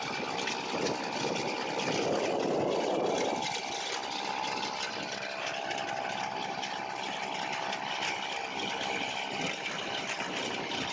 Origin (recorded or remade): recorded